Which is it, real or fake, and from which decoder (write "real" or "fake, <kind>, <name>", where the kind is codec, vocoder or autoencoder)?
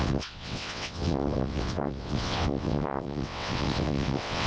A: fake, vocoder, WaveNeXt